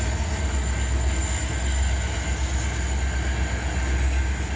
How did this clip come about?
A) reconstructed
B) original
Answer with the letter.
B